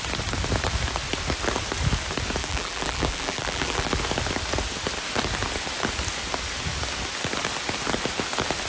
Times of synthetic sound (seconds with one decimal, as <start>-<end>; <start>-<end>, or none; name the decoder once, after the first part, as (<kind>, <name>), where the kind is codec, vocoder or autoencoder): 2.4-4.0 (vocoder, BigVGAN v2)